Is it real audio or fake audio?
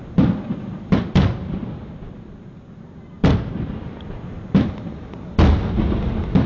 real